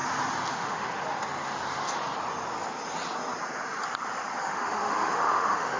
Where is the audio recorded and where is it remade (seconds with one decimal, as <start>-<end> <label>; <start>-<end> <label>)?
0.0-0.5 recorded; 0.5-0.9 remade; 0.9-4.4 recorded; 4.4-5.8 remade